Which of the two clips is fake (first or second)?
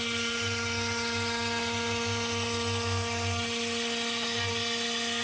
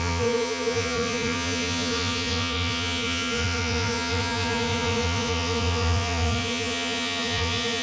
second